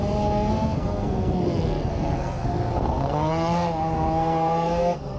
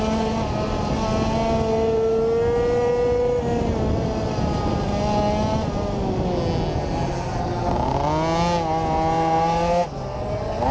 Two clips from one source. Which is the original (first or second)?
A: second